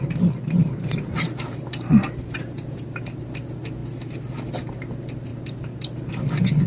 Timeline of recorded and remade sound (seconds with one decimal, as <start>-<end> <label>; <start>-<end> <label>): 0.0-0.6 recorded; 0.6-3.2 remade; 3.2-5.3 recorded; 5.3-6.1 remade; 6.1-6.7 recorded